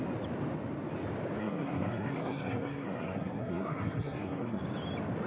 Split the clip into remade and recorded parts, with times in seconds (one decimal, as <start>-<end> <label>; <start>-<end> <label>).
0.0-1.4 recorded; 1.4-4.6 remade; 4.6-5.3 recorded